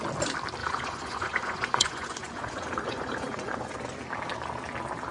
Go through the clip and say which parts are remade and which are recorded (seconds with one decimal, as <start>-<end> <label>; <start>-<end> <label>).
0.0-0.6 recorded; 0.6-3.7 remade; 3.7-5.1 recorded